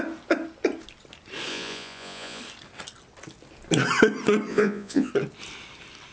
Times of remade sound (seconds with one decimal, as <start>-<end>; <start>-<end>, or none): 1.5-2.4; 4.5-5.1